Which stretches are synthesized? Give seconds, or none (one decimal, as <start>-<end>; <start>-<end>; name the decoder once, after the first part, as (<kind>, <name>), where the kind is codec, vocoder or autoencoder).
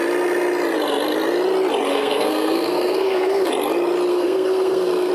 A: 1.9-3.5 (codec, SNAC); 4.1-5.1